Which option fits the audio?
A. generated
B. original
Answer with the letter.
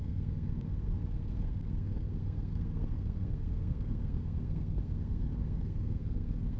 A